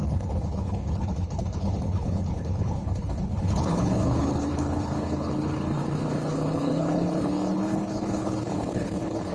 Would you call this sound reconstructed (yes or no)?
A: yes